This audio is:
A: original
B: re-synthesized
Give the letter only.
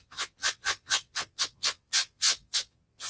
B